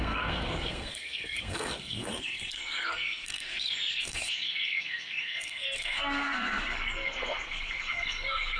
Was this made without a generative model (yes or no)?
no